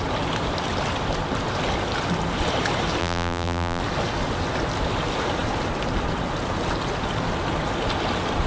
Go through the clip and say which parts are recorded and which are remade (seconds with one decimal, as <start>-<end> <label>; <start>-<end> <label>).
0.0-3.0 recorded; 3.0-3.8 remade; 3.8-8.5 recorded